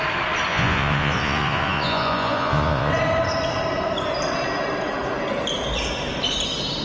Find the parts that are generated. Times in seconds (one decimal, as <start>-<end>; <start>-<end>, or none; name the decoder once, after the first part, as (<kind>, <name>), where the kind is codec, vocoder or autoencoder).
0.5-2.9 (vocoder, Vocos)